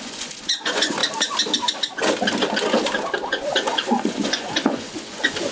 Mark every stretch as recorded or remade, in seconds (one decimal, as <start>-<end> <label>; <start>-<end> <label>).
0.0-1.0 remade; 1.0-3.3 recorded; 3.3-5.5 remade